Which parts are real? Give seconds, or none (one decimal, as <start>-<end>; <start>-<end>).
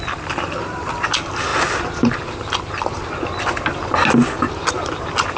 1.5-4.7